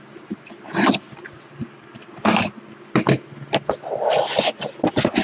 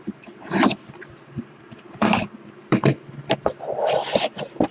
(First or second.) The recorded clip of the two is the first